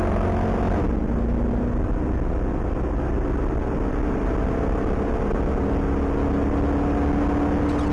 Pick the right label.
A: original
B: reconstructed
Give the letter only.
A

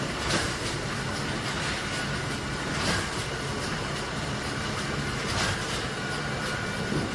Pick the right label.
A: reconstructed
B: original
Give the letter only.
B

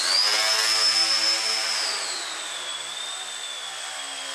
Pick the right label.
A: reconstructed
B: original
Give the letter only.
B